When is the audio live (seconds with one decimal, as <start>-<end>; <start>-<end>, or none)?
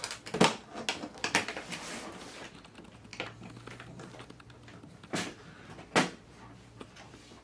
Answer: 0.0-7.4